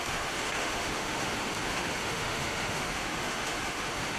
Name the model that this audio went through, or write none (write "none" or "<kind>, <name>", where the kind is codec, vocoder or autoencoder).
autoencoder, DAC-VAE